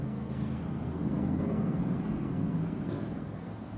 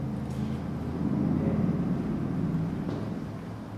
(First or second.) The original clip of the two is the second